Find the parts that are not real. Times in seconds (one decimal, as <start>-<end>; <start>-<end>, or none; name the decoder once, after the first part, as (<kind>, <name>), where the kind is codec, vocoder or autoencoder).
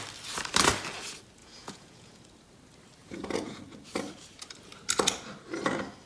1.4-2.1 (vocoder, Vocos); 3.0-3.6